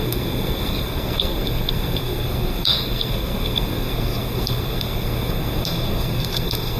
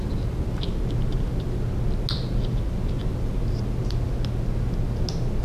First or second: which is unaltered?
second